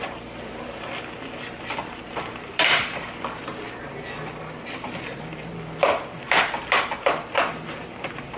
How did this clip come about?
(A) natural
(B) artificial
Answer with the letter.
A